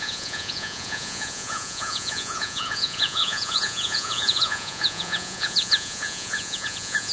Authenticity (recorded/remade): remade